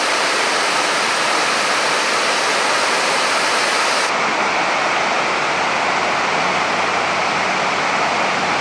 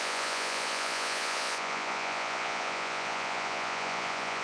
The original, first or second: first